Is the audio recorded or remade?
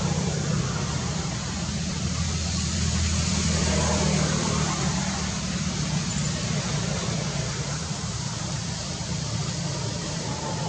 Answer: remade